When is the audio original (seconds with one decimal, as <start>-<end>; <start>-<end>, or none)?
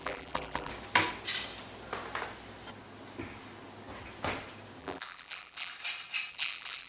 0.7-4.8; 5.7-6.3